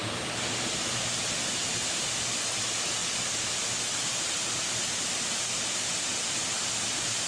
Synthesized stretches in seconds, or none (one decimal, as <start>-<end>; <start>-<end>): 0.0-1.8; 3.0-6.3